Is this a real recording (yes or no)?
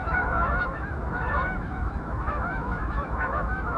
no